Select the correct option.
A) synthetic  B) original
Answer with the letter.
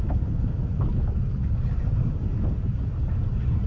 B